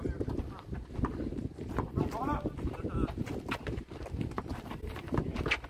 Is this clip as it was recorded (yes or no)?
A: no